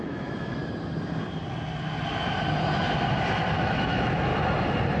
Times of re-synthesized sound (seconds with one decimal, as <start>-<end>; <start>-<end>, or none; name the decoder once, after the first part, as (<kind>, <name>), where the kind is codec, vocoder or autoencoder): 0.0-0.6 (autoencoder, DAC-VAE); 3.6-4.3